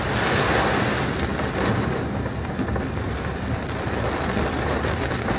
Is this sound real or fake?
real